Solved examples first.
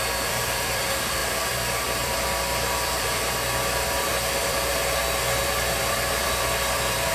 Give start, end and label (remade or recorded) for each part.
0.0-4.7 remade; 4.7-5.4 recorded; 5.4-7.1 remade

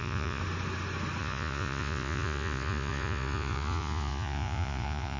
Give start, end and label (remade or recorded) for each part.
0.0-0.4 remade; 0.4-1.2 recorded; 1.2-5.2 remade